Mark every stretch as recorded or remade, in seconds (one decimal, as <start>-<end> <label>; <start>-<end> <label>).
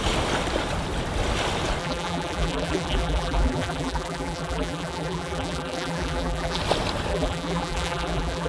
0.0-1.8 recorded; 1.8-6.6 remade; 6.6-7.1 recorded; 7.1-8.5 remade